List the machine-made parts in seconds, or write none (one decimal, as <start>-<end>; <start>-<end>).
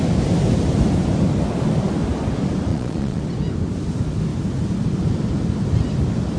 2.7-3.2